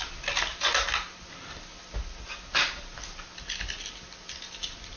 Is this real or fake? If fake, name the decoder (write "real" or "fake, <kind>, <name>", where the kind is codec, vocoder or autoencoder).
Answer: real